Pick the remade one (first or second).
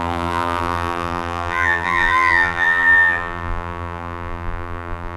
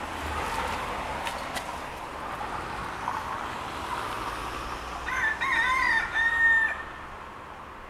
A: first